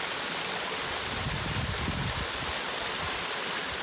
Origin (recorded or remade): recorded